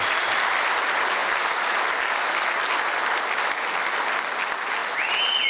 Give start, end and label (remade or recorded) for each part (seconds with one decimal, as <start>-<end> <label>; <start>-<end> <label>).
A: 0.0-5.5 recorded